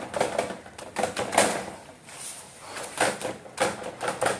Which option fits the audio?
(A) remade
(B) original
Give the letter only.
B